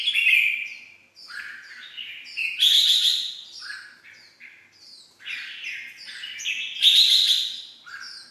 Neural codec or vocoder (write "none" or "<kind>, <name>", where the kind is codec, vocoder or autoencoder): none